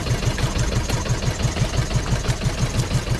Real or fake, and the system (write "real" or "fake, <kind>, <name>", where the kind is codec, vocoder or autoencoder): real